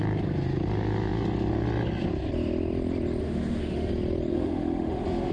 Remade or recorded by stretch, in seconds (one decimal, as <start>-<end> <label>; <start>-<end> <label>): 0.0-3.2 recorded; 3.2-3.9 remade; 3.9-4.3 recorded; 4.3-5.3 remade